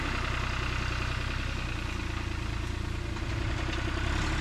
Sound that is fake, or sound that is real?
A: real